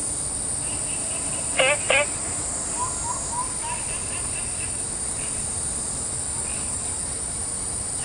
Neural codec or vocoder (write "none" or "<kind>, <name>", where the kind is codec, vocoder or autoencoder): none